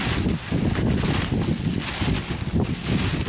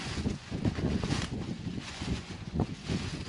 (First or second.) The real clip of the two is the first